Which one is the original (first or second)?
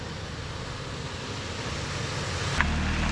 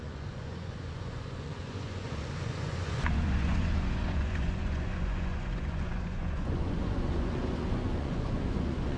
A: first